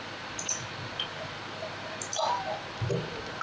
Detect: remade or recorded recorded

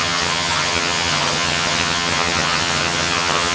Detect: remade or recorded remade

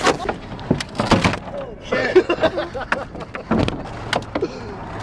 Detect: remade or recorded recorded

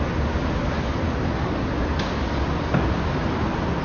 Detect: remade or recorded recorded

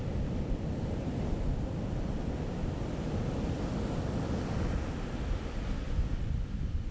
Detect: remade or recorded recorded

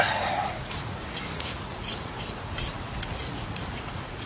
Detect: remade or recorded remade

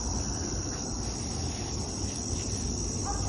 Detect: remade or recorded recorded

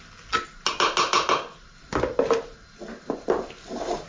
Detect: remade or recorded recorded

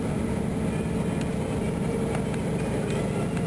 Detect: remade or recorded recorded